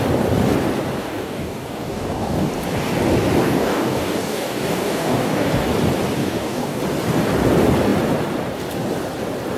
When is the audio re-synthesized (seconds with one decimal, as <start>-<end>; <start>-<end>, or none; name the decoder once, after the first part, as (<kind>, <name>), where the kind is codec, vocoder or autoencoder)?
1.0-2.5 (codec, DAC); 3.4-5.5; 6.2-6.8